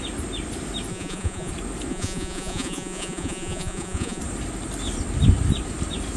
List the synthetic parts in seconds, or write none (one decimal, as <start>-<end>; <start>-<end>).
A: 0.9-1.5; 1.9-4.2